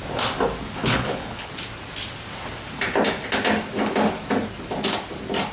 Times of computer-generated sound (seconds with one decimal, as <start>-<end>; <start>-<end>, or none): 0.8-1.5